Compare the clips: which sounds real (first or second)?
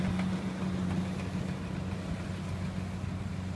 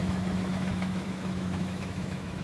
first